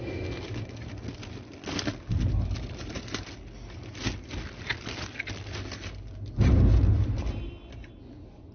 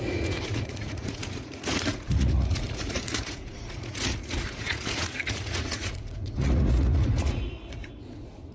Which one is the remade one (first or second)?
second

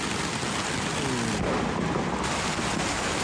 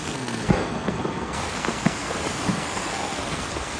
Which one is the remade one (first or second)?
second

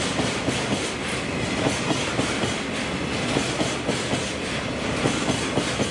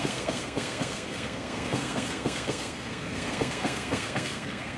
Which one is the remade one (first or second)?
second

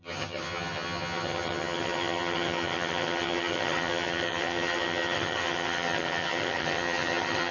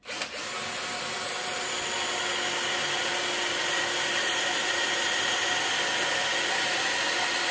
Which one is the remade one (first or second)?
first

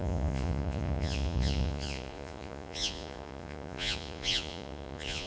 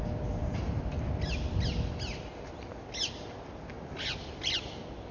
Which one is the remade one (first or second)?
first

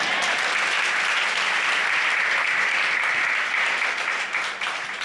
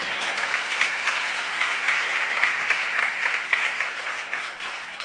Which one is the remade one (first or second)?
second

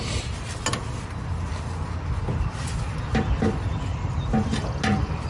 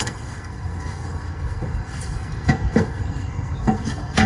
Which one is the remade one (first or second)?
second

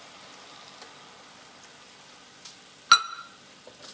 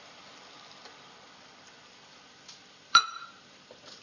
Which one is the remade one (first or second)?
second